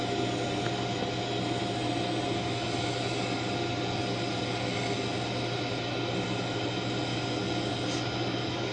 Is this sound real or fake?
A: real